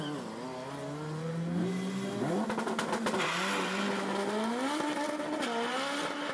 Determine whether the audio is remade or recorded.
recorded